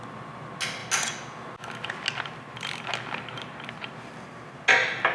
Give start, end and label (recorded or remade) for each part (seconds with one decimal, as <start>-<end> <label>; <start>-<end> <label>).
0.0-5.1 recorded